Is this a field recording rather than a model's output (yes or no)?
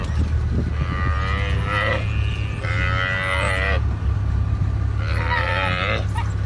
yes